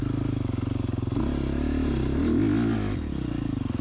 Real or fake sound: real